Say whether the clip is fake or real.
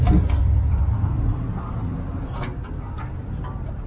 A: real